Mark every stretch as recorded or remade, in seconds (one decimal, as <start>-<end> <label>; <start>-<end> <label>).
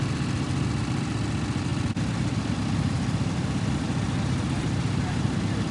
0.0-5.7 recorded